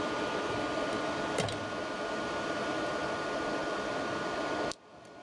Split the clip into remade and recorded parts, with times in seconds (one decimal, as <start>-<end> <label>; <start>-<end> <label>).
0.0-5.2 recorded